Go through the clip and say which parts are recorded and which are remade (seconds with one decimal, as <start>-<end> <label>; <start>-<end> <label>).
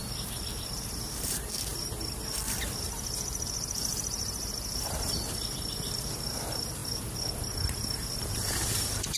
0.0-6.8 remade; 6.8-8.3 recorded; 8.3-9.2 remade